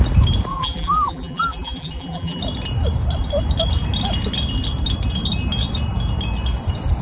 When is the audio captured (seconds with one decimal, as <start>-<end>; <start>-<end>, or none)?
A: 0.0-0.5; 2.4-7.0